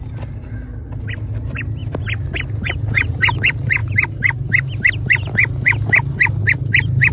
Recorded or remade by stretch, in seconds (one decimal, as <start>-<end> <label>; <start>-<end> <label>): 0.0-7.1 recorded